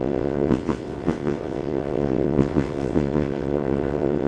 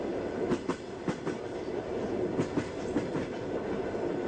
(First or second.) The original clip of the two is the second